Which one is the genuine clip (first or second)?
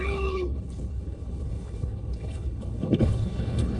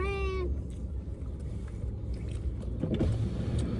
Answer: second